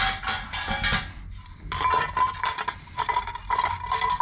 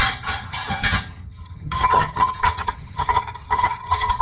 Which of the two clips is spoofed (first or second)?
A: second